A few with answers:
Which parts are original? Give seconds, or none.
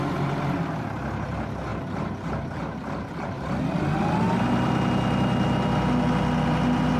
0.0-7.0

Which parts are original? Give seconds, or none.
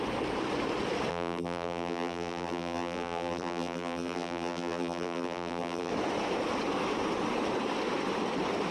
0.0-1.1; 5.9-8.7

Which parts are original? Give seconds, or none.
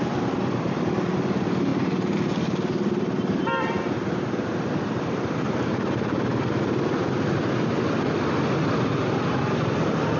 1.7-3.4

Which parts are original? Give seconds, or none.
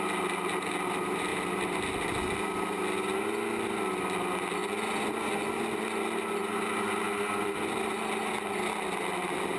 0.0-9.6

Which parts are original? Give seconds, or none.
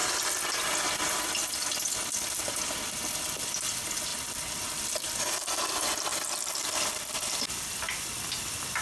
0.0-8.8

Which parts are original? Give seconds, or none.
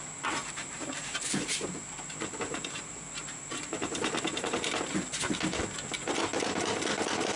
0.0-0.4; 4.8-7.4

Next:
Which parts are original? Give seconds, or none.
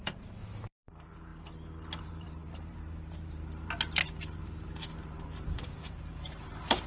1.3-2.0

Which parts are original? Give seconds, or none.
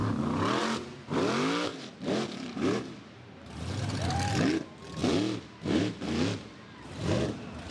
0.0-1.7; 4.0-7.7